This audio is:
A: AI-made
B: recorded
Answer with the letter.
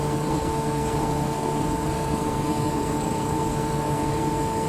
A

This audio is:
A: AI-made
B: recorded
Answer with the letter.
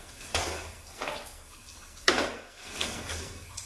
A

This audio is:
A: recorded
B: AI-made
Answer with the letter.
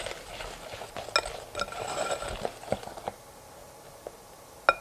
A